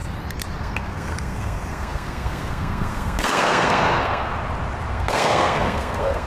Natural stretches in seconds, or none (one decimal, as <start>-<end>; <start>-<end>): 0.0-0.6; 4.3-4.9